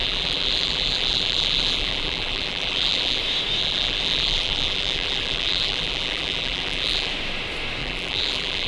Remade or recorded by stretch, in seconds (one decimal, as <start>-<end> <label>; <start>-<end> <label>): 0.0-3.2 remade; 3.2-3.6 recorded; 3.6-7.1 remade; 7.1-7.8 recorded; 7.8-8.7 remade